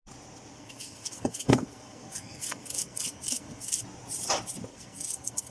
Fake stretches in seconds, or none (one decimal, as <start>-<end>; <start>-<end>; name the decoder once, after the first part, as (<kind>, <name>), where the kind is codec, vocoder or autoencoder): 0.5-3.8 (codec, SNAC); 4.7-5.5